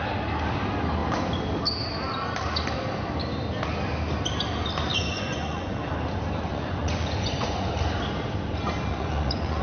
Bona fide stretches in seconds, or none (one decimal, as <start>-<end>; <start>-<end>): 0.0-4.9; 5.8-6.5; 7.7-8.9